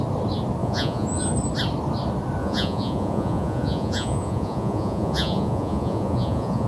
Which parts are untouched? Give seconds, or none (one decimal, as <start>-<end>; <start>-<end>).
0.0-0.6; 1.2-2.4